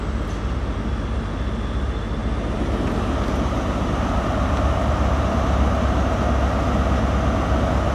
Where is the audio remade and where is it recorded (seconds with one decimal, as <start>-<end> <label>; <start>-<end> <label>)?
0.0-2.2 recorded; 2.2-6.1 remade; 6.1-7.9 recorded

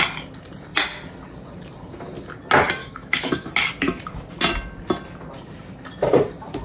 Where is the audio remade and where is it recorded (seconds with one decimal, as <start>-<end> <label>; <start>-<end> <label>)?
0.0-2.8 recorded; 2.8-3.5 remade; 3.5-6.6 recorded

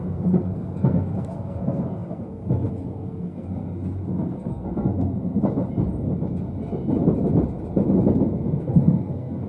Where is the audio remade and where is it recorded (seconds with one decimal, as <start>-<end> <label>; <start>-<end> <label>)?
0.0-4.9 remade; 4.9-8.6 recorded; 8.6-9.5 remade

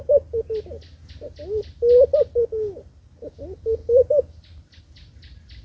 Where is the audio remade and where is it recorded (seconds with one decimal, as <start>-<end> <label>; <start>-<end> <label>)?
0.0-5.6 recorded

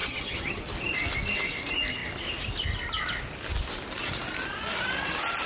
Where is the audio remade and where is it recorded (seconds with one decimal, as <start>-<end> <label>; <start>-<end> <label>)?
0.0-0.6 remade; 0.6-5.5 recorded